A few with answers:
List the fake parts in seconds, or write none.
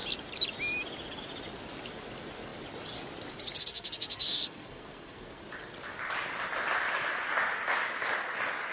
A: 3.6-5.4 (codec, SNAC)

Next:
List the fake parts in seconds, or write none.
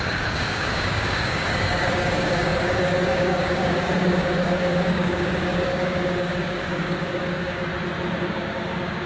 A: 0.0-7.7 (codec, DAC); 8.2-9.1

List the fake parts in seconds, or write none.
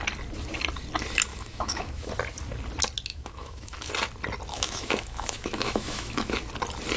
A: 1.3-2.1 (autoencoder, DAC-VAE); 3.1-3.9; 4.5-6.4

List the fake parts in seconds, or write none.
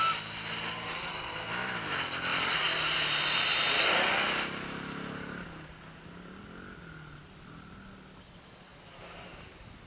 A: 2.3-3.5 (vocoder, BigVGAN v2); 8.7-9.4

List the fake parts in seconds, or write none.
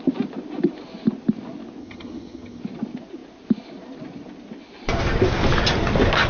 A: 1.8-2.6 (vocoder, HiFi-GAN)